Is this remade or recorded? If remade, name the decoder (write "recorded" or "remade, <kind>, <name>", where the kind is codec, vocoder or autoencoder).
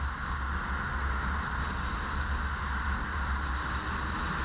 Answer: recorded